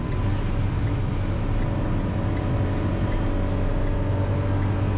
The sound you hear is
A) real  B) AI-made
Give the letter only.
A